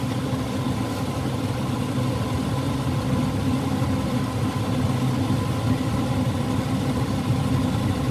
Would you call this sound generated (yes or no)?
no